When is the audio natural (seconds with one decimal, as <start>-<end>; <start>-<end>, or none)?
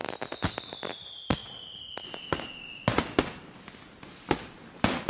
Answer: 0.0-5.1